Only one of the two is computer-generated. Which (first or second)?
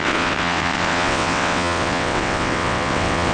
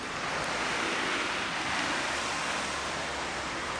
first